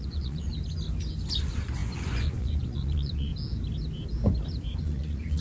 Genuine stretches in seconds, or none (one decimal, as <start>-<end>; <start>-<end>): 0.5-1.4; 3.3-4.8